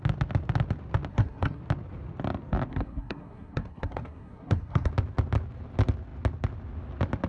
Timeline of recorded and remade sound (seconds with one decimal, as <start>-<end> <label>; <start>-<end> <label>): 0.0-1.1 recorded; 1.1-1.6 remade; 1.6-2.7 recorded; 2.7-4.9 remade; 4.9-7.3 recorded